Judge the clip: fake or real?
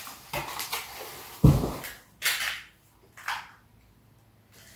real